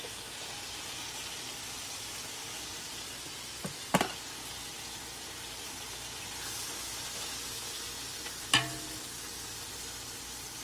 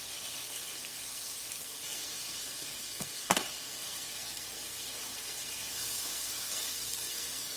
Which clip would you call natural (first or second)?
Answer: first